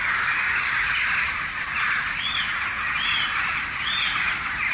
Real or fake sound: real